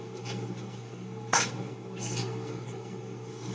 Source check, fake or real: fake